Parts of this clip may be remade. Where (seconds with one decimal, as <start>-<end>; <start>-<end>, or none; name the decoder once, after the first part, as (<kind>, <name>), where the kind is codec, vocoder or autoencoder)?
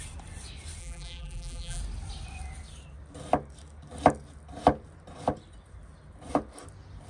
0.8-1.8 (vocoder, BigVGAN v2)